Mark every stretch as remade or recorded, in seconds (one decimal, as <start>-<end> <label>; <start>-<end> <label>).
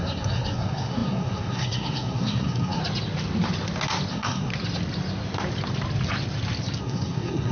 0.0-2.8 remade; 2.8-4.1 recorded; 4.1-4.5 remade; 4.5-6.8 recorded; 6.8-7.5 remade